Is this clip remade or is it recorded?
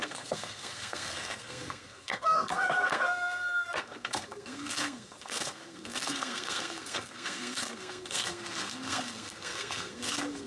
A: remade